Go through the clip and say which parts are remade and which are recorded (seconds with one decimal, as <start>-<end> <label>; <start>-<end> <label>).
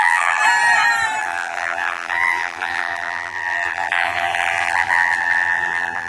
0.0-0.4 remade; 0.4-1.2 recorded; 1.2-6.1 remade